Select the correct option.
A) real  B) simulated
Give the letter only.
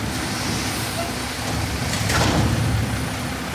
A